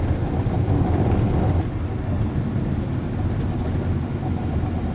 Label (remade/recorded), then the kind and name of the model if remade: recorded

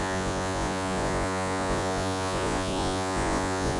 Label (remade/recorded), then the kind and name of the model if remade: remade, vocoder, Vocos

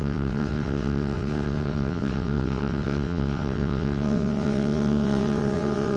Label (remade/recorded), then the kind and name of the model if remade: remade, vocoder, WaveNeXt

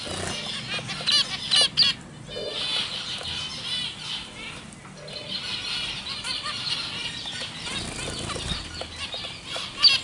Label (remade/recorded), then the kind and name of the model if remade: recorded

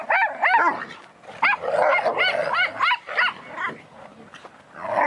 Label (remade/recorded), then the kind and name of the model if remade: recorded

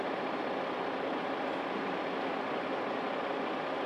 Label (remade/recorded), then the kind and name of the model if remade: recorded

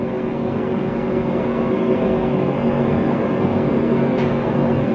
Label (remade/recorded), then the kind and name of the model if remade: remade, codec, SNAC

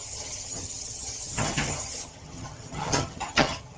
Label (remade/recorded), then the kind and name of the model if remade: remade, vocoder, HiFi-GAN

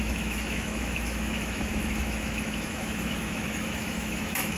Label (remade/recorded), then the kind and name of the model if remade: remade, autoencoder, DAC-VAE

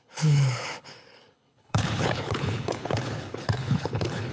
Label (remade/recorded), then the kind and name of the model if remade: remade, codec, HILCodec